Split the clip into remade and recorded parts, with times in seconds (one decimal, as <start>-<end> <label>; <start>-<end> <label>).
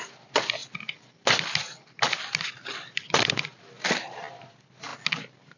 0.0-5.6 recorded